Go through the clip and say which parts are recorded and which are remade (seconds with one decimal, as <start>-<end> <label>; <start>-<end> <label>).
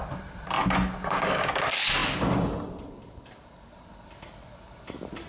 0.0-1.0 recorded; 1.0-1.5 remade; 1.5-5.3 recorded